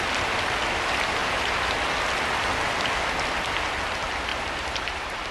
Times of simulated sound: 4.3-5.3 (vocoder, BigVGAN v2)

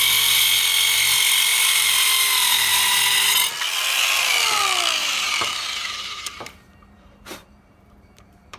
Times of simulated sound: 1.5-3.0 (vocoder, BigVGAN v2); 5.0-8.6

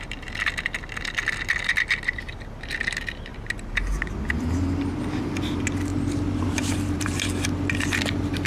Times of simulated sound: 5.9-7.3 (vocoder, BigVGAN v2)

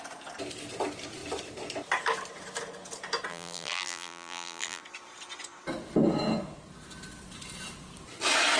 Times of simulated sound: 3.3-4.8 (vocoder, BigVGAN v2)

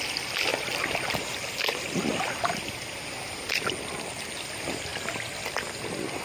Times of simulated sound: 0.5-1.3 (vocoder, BigVGAN v2)

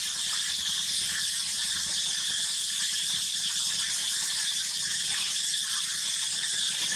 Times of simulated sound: 0.0-7.0 (vocoder, BigVGAN v2)

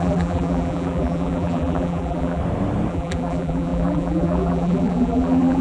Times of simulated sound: 0.0-2.4 (vocoder, BigVGAN v2); 2.9-5.6

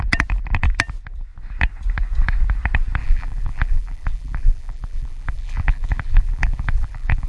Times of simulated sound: 3.0-7.3 (vocoder, BigVGAN v2)